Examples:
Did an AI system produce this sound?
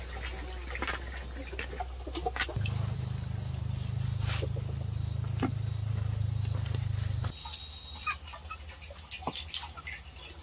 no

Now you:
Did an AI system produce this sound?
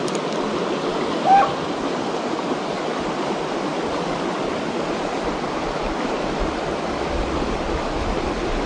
no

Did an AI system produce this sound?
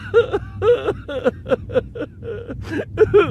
no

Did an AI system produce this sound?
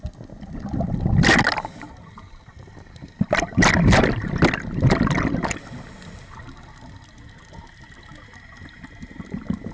no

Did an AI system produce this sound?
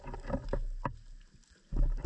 no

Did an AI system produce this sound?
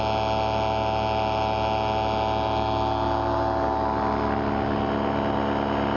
no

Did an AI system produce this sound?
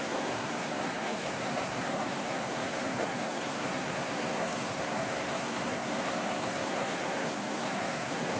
yes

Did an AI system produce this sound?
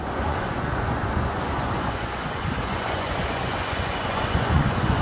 yes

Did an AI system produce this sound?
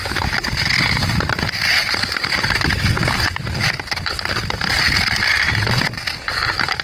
no